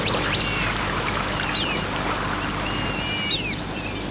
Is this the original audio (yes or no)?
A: yes